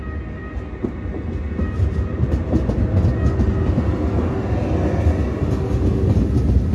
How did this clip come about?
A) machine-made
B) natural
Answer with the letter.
B